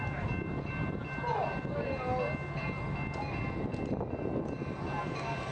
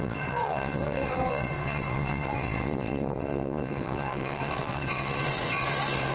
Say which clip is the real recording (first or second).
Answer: first